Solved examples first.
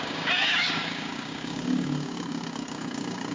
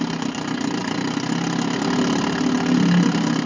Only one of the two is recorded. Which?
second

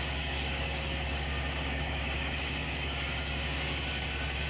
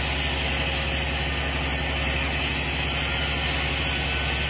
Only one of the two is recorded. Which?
second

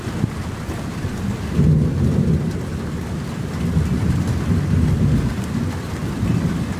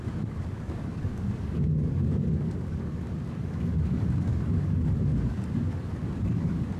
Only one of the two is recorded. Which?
first